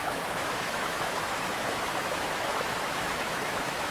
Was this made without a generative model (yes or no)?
no